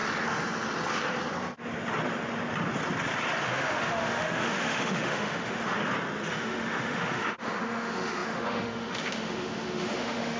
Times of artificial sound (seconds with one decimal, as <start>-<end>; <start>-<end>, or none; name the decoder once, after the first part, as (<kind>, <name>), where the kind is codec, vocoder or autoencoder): 3.4-5.8 (autoencoder, DAC-VAE); 6.3-10.4